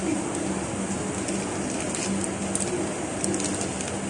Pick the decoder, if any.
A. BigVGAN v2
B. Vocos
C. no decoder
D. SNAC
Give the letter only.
C